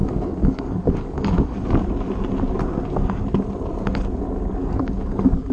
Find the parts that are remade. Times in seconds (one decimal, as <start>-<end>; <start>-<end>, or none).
0.0-1.7; 4.6-5.5